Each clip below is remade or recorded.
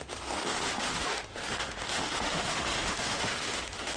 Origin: remade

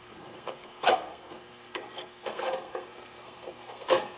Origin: remade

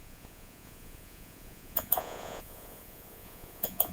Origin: remade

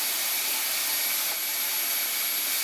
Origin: recorded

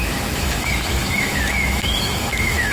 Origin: remade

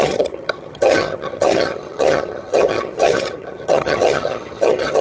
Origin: remade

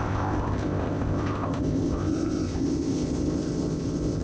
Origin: remade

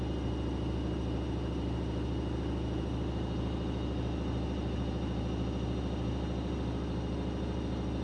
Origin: recorded